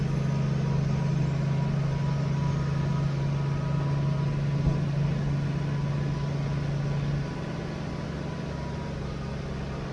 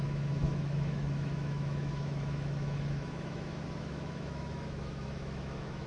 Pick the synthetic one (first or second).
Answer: second